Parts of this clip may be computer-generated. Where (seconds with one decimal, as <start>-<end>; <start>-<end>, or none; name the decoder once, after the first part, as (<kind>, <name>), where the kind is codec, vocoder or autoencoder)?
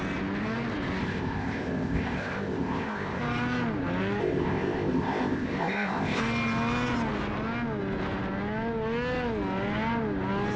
1.0-3.2 (codec, ZipCodec); 4.2-6.2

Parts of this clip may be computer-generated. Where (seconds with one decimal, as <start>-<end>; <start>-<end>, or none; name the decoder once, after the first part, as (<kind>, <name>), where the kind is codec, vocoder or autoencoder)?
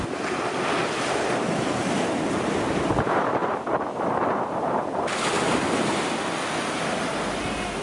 none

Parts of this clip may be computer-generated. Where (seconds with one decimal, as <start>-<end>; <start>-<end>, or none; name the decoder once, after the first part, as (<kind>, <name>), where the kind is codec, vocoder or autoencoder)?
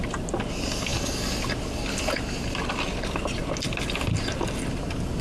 none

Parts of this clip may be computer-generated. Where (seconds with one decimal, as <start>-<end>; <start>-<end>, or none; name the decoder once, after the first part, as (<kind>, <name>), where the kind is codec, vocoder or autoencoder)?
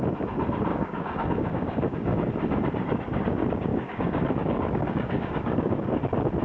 0.7-2.3 (codec, DAC); 3.7-6.0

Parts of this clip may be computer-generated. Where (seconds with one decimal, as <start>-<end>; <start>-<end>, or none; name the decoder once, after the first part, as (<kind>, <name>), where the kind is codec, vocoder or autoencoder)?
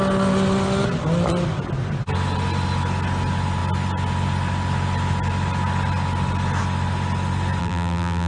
7.6-8.3 (vocoder, BigVGAN v2)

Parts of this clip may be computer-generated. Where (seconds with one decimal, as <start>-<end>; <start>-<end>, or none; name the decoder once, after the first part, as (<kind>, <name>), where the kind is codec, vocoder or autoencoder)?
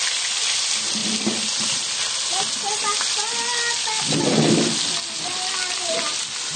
none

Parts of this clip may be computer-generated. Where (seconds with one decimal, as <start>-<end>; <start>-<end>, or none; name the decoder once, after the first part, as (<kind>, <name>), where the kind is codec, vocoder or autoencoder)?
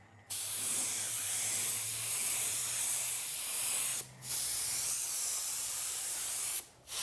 0.0-3.9 (vocoder, BigVGAN v2); 4.8-7.0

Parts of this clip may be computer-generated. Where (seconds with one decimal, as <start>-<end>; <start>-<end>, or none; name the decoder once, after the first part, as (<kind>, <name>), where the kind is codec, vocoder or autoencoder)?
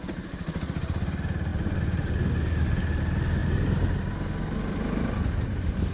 none